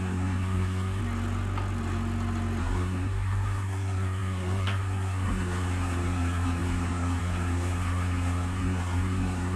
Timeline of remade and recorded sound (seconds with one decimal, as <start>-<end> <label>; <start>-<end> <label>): 0.0-1.0 remade; 1.0-2.6 recorded; 2.6-9.6 remade